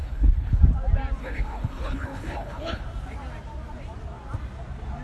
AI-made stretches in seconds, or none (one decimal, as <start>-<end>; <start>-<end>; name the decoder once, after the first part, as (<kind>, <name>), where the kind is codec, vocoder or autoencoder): 0.0-0.6 (codec, HILCodec); 1.2-2.8